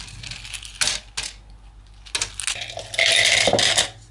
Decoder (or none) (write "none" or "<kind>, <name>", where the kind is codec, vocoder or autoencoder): none